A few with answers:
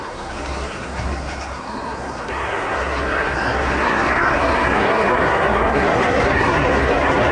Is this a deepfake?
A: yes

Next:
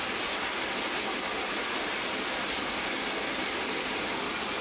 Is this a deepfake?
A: no